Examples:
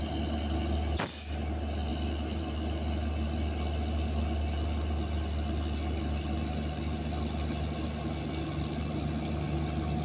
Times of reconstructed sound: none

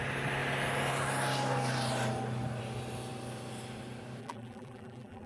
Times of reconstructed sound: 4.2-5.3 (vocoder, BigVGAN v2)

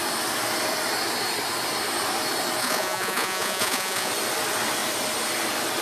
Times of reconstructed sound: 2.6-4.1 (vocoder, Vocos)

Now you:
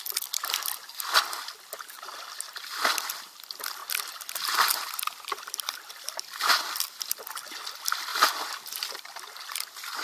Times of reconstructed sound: 3.8-7.0 (vocoder, BigVGAN v2); 8.1-9.2